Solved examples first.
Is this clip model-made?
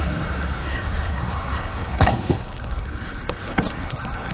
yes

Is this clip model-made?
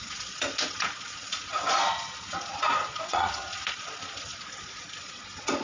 yes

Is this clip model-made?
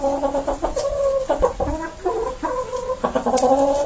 no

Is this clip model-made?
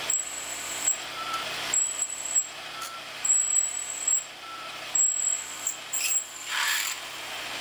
yes